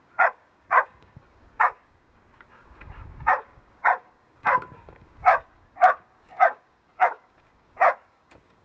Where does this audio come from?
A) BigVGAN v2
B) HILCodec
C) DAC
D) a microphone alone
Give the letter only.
C